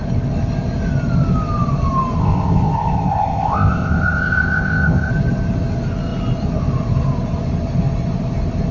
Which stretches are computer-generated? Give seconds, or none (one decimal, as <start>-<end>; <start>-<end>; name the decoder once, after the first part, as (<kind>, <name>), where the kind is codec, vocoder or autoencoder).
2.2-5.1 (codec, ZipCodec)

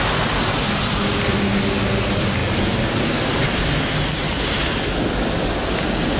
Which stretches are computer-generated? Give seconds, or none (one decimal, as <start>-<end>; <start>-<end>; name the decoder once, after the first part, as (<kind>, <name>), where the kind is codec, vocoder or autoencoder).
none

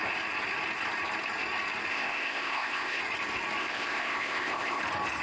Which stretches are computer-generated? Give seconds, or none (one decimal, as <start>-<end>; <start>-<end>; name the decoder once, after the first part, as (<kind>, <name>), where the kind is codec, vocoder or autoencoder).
1.9-3.0 (codec, ZipCodec); 3.6-4.8